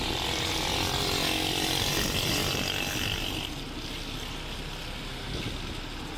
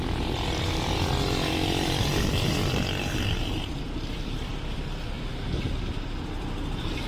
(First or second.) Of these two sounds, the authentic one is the first